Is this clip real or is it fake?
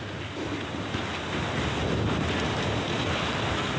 real